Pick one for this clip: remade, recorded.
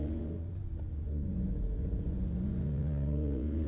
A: remade